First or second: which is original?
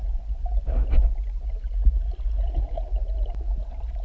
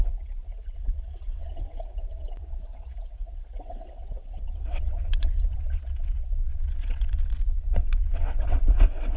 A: first